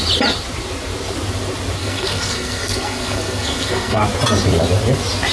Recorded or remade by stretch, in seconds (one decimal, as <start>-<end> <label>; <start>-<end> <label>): 0.0-1.8 recorded; 1.8-4.0 remade; 4.0-5.3 recorded